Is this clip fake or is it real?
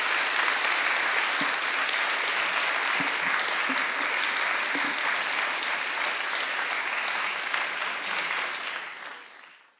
real